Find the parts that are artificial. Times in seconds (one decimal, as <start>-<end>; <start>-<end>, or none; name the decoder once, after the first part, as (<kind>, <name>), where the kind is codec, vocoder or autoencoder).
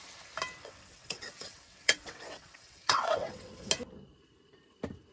0.6-3.7 (vocoder, WaveNeXt)